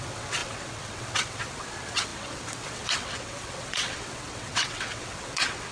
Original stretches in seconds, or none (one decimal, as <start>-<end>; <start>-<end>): none